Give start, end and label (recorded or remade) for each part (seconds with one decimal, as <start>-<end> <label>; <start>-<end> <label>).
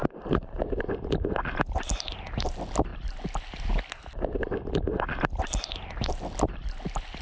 0.0-7.2 recorded